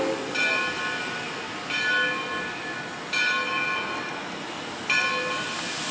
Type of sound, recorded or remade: recorded